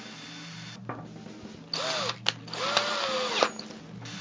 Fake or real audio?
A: real